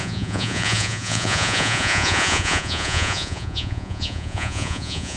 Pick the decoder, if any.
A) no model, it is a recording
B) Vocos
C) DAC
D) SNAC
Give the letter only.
B